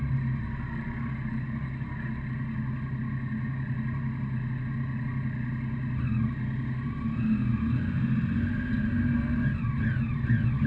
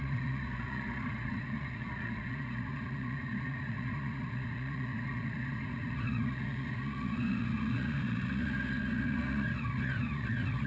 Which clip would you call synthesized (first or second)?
second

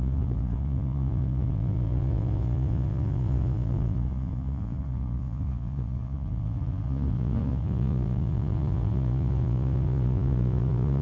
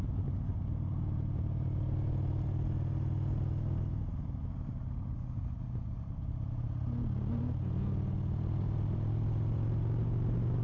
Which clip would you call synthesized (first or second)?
first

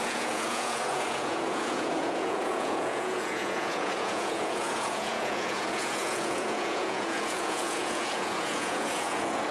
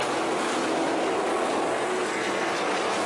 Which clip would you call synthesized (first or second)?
first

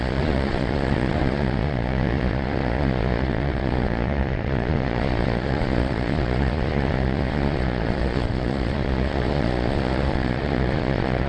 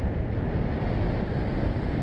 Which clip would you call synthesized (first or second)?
first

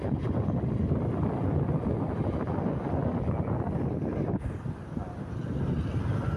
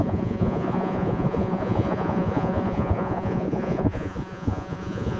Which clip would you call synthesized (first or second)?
second